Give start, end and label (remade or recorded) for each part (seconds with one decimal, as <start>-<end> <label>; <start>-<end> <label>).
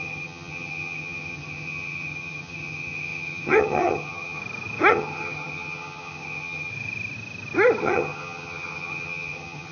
0.0-4.4 remade; 4.4-4.9 recorded; 4.9-6.7 remade; 6.7-7.8 recorded; 7.8-9.7 remade